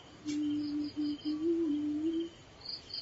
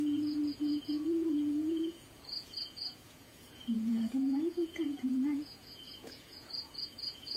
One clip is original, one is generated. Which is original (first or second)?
first